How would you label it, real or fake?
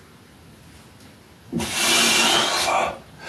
real